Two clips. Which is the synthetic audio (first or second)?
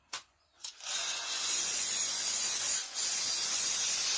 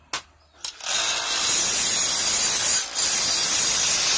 first